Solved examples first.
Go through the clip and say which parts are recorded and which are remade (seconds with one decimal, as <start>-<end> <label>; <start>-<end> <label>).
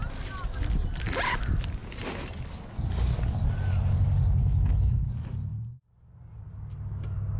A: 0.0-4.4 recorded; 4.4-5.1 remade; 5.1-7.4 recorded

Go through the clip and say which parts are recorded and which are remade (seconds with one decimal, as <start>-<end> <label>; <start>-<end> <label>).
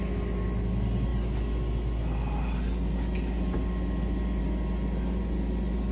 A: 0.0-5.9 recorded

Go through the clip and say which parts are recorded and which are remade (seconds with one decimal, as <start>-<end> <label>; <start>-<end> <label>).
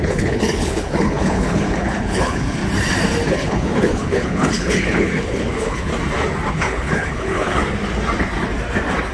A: 0.0-2.6 remade; 2.6-3.3 recorded; 3.3-5.9 remade; 5.9-6.5 recorded; 6.5-7.6 remade; 7.6-9.1 recorded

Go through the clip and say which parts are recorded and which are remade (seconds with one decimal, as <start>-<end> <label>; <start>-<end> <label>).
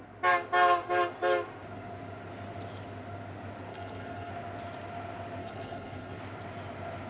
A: 0.0-3.7 recorded; 3.7-4.3 remade; 4.3-5.4 recorded; 5.4-6.2 remade; 6.2-7.1 recorded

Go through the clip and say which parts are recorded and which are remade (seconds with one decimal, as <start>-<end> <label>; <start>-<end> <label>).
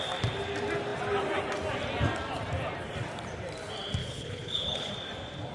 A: 0.0-4.0 recorded; 4.0-4.9 remade; 4.9-5.5 recorded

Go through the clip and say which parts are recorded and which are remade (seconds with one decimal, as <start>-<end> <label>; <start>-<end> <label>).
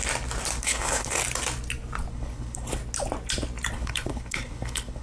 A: 0.0-0.6 recorded; 0.6-1.2 remade; 1.2-2.1 recorded; 2.1-2.8 remade; 2.8-3.7 recorded; 3.7-5.0 remade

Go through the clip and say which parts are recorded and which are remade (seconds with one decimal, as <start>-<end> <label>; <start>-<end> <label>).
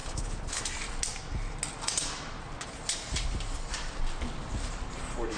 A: 0.0-0.6 remade; 0.6-5.4 recorded